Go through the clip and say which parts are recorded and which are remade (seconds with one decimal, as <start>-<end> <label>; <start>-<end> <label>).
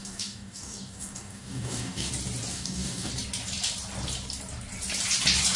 0.0-2.1 remade; 2.1-2.5 recorded; 2.5-3.1 remade; 3.1-5.6 recorded